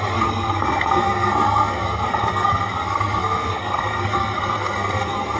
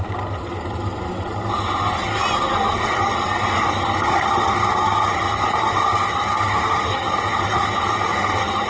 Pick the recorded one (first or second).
second